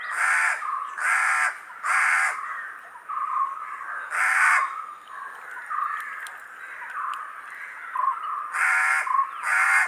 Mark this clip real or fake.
real